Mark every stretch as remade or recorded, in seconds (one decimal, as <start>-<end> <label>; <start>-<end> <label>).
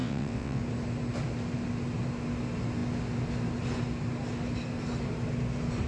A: 0.0-0.6 remade; 0.6-5.9 recorded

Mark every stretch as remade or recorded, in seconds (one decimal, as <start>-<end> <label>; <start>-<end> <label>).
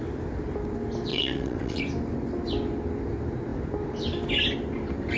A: 0.0-1.1 recorded; 1.1-1.8 remade; 1.8-5.2 recorded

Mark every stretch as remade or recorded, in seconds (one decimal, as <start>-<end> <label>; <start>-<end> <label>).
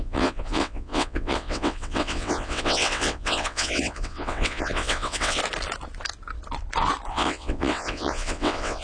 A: 0.0-5.4 remade; 5.4-7.1 recorded; 7.1-8.8 remade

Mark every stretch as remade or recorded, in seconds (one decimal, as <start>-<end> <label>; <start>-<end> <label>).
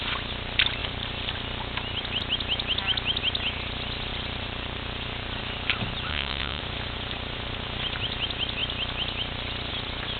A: 0.0-6.1 recorded; 6.1-6.6 remade; 6.6-10.2 recorded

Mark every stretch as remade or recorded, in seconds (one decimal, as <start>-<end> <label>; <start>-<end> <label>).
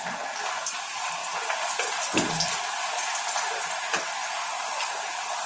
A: 0.0-5.5 recorded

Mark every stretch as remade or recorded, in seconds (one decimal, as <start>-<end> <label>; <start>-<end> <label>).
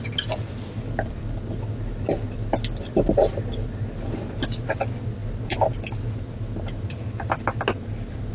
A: 0.0-8.3 recorded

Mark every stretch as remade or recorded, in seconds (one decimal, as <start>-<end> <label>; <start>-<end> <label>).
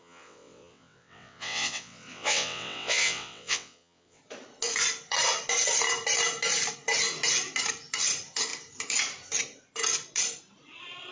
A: 0.0-4.2 remade; 4.2-11.1 recorded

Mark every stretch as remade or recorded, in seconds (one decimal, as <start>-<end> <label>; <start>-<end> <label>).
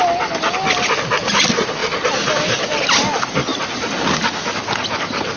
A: 0.0-5.4 recorded